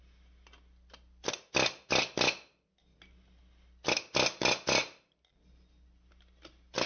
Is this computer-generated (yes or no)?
no